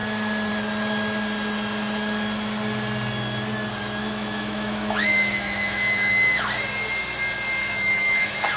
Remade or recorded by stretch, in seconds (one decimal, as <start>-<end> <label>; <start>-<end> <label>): 0.0-4.0 recorded; 4.0-6.5 remade; 6.5-7.6 recorded; 7.6-8.6 remade